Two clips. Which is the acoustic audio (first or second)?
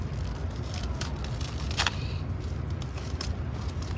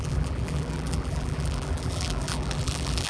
first